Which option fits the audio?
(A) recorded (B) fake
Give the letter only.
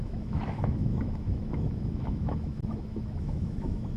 B